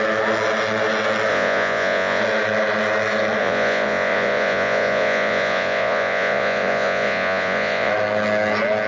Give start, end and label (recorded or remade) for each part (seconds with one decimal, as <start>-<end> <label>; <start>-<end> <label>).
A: 0.0-1.3 recorded; 1.3-2.2 remade; 2.2-3.4 recorded; 3.4-7.9 remade; 7.9-8.9 recorded